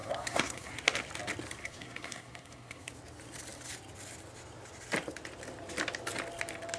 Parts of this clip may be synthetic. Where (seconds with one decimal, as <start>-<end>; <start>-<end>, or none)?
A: 0.0-0.7; 1.6-2.9